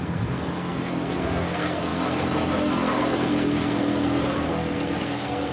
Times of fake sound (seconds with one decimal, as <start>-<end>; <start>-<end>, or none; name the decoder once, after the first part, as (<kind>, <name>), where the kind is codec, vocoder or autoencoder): 0.0-5.5 (codec, SNAC)